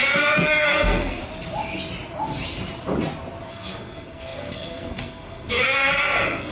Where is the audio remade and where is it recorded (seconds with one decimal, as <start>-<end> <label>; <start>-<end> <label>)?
0.0-1.2 remade; 1.2-3.5 recorded; 3.5-6.5 remade